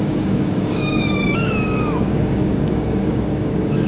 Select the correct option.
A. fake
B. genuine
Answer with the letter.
A